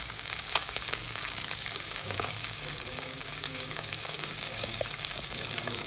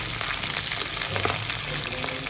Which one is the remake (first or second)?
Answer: first